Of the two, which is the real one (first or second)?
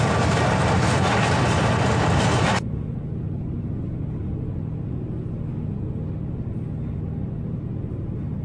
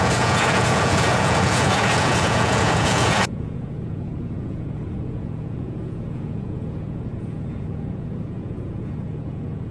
first